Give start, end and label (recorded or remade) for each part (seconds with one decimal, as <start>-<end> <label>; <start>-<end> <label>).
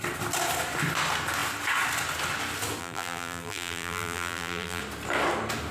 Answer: 0.0-2.8 recorded; 2.8-4.8 remade; 4.8-5.7 recorded